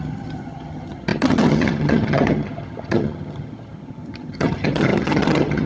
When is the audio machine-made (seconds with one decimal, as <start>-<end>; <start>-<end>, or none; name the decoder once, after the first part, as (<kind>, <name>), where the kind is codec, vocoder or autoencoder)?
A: 0.0-5.7 (vocoder, HiFi-GAN)